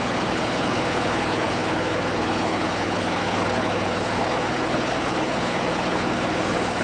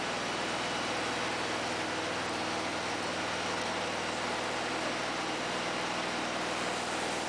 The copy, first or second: first